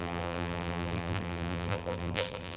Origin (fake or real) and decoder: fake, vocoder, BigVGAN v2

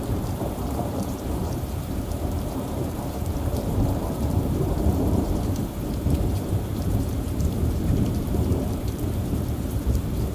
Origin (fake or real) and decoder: fake, vocoder, BigVGAN v2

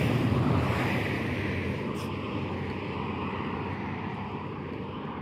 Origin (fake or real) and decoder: fake, vocoder, BigVGAN v2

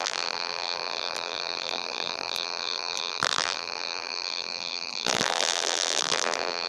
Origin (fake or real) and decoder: fake, vocoder, BigVGAN v2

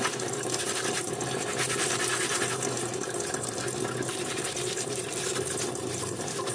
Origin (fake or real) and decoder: fake, vocoder, BigVGAN v2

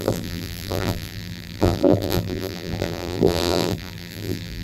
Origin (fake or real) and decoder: fake, vocoder, BigVGAN v2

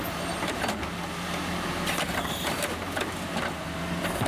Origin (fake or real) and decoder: real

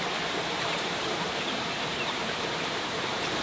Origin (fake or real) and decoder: fake, vocoder, BigVGAN v2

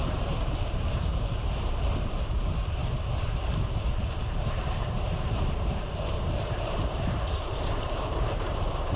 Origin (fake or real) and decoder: fake, vocoder, BigVGAN v2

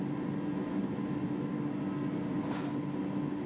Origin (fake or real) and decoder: real